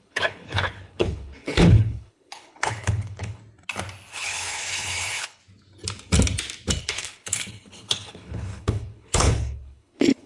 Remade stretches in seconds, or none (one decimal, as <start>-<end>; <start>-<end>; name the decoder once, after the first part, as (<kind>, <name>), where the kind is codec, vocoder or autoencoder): 0.0-3.4 (codec, HILCodec); 4.1-5.4; 6.8-10.3